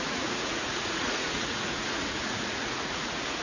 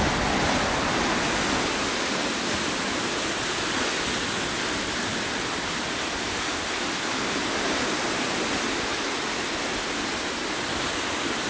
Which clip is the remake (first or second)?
first